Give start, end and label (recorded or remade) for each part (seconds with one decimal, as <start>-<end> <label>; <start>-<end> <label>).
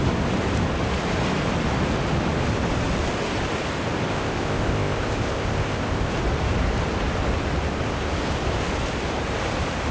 0.0-4.1 recorded; 4.1-6.1 remade; 6.1-9.9 recorded